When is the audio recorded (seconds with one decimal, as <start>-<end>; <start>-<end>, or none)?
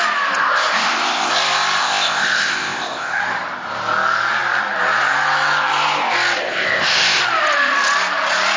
0.0-0.4; 1.3-1.8; 3.2-6.4; 7.2-8.6